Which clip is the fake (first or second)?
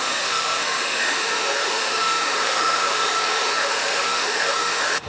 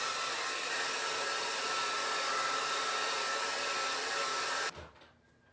first